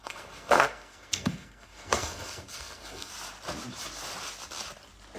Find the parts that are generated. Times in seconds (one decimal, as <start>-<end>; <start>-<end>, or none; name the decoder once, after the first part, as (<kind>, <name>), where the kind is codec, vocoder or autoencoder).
0.0-3.1 (codec, SNAC)